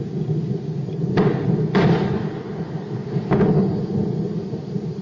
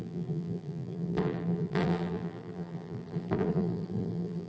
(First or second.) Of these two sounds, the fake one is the second